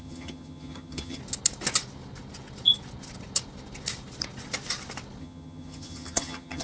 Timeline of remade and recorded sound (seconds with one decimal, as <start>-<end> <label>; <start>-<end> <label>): 0.0-1.2 remade; 1.2-5.2 recorded; 5.2-6.6 remade

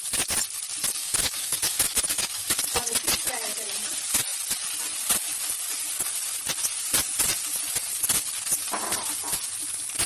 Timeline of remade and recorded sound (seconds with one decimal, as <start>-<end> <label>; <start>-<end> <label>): 0.0-1.0 recorded; 1.0-2.6 remade; 2.6-10.1 recorded

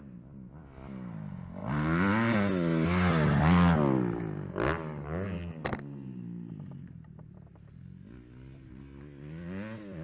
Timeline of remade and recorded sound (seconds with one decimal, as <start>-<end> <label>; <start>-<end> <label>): 0.0-10.0 recorded

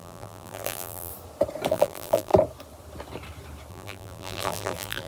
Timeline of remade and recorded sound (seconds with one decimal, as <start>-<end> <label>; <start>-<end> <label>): 0.0-1.1 remade; 1.1-1.7 recorded; 1.7-2.3 remade; 2.3-3.7 recorded; 3.7-5.1 remade

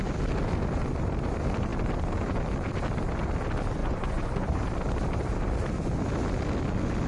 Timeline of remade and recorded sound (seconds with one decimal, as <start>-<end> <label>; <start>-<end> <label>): 0.0-3.8 recorded; 3.8-4.6 remade; 4.6-7.1 recorded

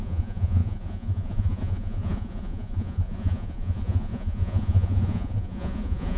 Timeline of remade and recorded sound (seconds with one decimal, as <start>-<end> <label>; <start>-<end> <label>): 0.0-6.2 remade